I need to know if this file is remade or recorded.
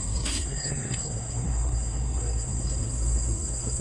remade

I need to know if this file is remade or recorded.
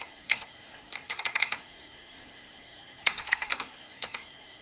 remade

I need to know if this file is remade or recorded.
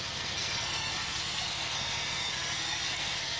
remade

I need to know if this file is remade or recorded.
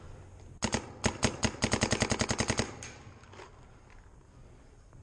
recorded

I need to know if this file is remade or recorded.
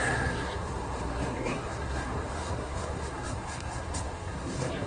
remade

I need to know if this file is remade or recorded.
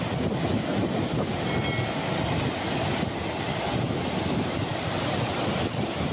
recorded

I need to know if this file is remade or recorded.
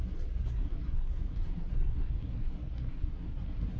remade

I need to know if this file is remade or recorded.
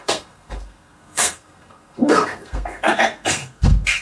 remade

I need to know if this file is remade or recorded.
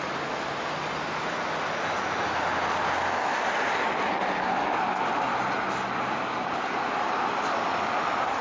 recorded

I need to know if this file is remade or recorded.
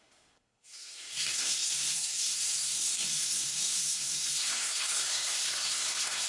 remade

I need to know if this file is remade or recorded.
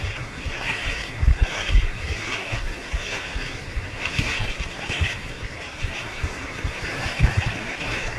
remade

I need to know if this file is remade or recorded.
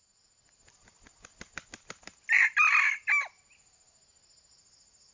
recorded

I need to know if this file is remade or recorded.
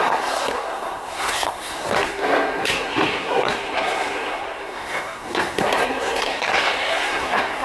remade